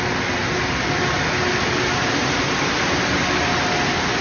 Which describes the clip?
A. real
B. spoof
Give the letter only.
A